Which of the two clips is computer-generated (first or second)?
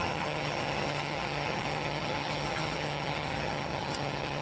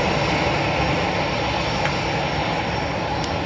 first